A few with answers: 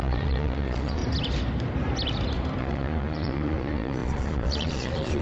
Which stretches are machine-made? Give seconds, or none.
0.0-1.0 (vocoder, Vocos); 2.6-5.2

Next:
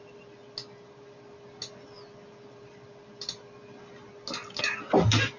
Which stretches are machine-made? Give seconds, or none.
none